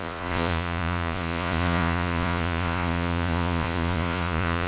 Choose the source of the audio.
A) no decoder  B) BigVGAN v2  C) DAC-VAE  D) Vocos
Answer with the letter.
D